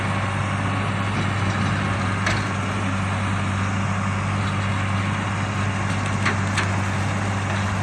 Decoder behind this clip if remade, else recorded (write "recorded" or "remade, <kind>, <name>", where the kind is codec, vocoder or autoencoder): recorded